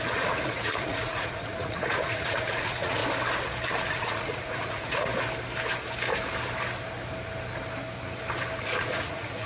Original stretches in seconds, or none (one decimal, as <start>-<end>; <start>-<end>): 3.0-3.9; 5.1-8.6